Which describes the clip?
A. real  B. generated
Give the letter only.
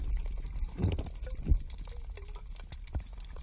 A